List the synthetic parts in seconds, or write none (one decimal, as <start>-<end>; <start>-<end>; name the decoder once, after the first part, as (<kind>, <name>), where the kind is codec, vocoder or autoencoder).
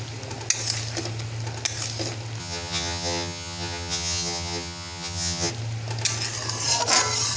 2.4-5.5 (vocoder, HiFi-GAN)